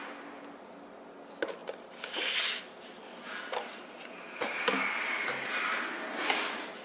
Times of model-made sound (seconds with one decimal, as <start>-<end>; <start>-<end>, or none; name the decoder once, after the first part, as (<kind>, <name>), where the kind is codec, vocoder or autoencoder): none